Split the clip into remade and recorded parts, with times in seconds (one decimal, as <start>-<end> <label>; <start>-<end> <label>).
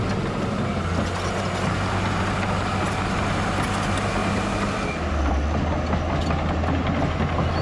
0.0-7.6 recorded